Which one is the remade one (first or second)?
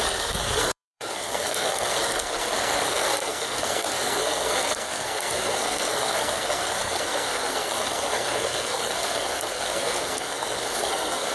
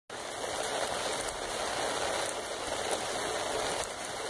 first